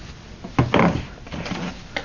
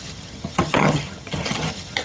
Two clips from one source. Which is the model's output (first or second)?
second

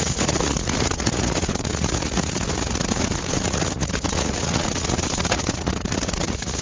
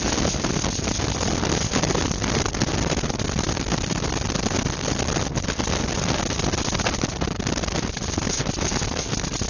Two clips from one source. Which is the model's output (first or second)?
first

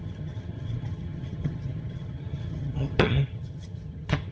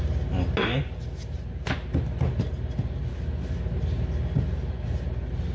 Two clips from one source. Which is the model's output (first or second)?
first